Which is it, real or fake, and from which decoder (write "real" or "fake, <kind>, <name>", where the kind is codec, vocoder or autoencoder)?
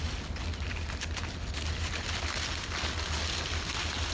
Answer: real